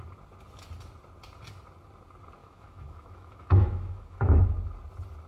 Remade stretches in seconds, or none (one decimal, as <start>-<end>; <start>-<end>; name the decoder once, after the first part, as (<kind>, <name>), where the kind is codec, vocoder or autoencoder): 2.4-4.4 (autoencoder, DAC-VAE)